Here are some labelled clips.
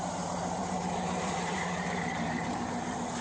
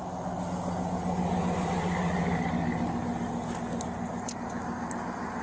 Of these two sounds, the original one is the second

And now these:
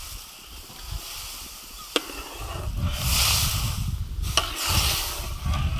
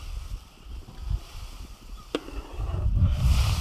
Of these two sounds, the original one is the first